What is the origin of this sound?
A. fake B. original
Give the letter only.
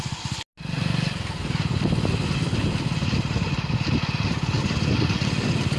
B